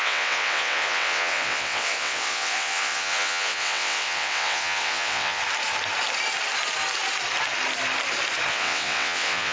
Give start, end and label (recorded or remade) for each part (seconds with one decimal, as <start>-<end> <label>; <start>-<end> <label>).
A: 0.0-5.4 remade; 5.4-8.5 recorded; 8.5-9.5 remade